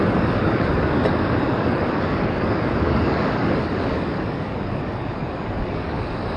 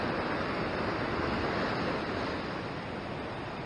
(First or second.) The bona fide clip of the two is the second